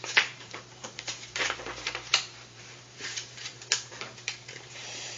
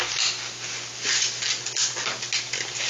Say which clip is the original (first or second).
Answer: second